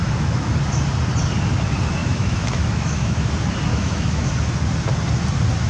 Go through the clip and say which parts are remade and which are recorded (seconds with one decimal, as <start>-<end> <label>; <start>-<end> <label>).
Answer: 0.0-0.5 remade; 0.5-2.0 recorded; 2.0-3.3 remade; 3.3-3.7 recorded; 3.7-4.3 remade; 4.3-5.7 recorded